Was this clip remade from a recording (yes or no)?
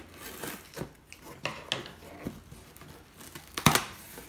no